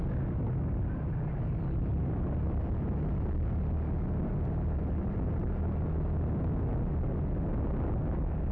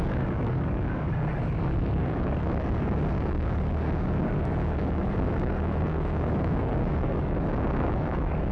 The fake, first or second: second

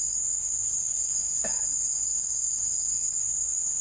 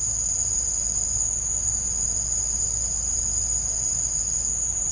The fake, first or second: first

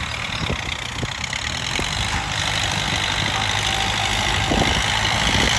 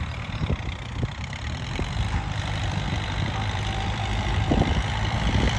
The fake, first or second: second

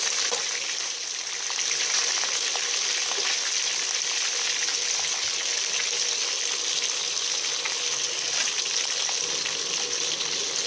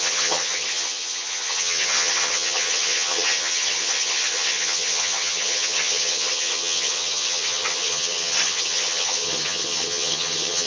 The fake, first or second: second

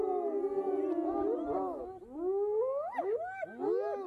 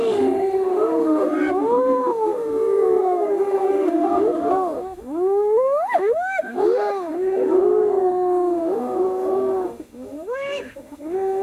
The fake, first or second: second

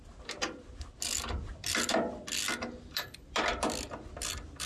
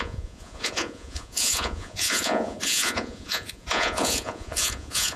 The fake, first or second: second